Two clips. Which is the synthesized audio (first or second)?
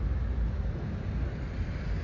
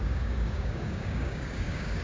second